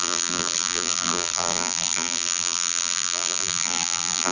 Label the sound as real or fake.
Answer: fake